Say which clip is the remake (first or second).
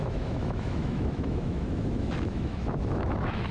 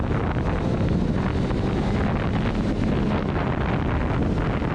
first